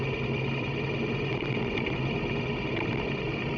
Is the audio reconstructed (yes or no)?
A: no